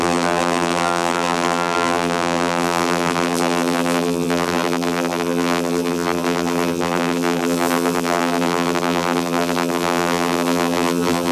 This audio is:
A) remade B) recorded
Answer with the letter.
A